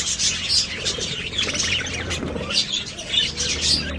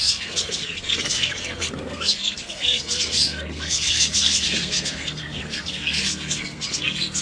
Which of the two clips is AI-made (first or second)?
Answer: second